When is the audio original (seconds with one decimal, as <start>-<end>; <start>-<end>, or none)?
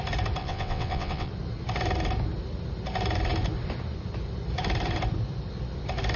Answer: 0.0-0.4; 1.3-6.2